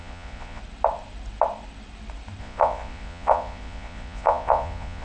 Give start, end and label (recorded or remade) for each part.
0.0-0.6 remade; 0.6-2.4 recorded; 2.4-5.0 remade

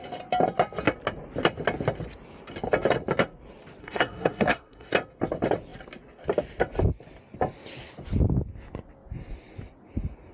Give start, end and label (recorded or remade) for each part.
0.0-3.8 recorded; 3.8-4.9 remade; 4.9-10.3 recorded

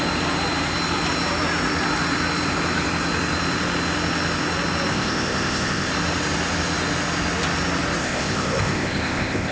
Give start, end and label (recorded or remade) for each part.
0.0-4.9 recorded; 4.9-5.9 remade; 5.9-8.0 recorded; 8.0-9.5 remade

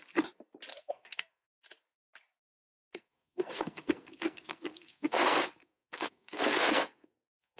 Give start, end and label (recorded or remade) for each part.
0.0-0.7 recorded; 0.7-1.6 remade; 1.6-2.6 recorded; 2.6-7.6 remade

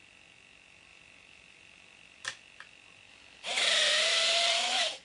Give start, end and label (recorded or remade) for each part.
0.0-0.9 recorded; 0.9-3.9 remade; 3.9-5.0 recorded

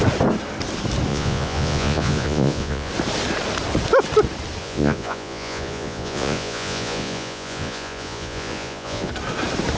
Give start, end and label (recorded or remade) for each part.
0.0-1.1 recorded; 1.1-2.9 remade; 2.9-4.6 recorded; 4.6-9.1 remade; 9.1-9.8 recorded

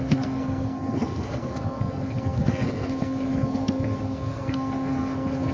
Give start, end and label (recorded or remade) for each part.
0.0-5.5 remade